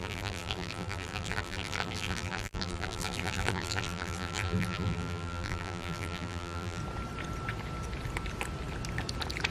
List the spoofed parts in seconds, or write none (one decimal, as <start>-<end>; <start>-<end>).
0.0-6.8